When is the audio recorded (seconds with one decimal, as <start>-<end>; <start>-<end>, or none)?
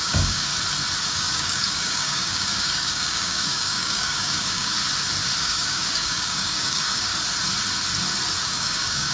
0.5-1.1; 4.8-5.4; 7.1-8.4